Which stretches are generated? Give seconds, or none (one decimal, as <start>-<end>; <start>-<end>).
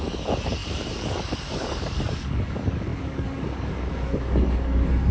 0.0-5.1